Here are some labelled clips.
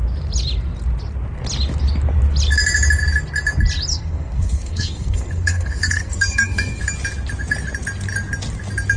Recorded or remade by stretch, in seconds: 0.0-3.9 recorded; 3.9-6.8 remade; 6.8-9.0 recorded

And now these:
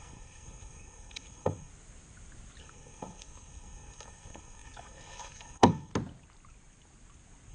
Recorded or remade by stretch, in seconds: 0.0-1.7 remade; 1.7-2.6 recorded; 2.6-5.9 remade; 5.9-7.5 recorded